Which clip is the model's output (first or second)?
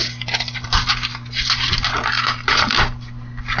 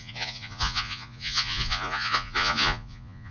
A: second